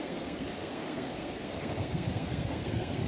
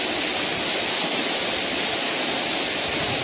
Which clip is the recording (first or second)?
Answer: second